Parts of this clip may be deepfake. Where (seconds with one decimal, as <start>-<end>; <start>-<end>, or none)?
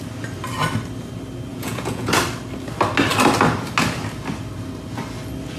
1.5-2.1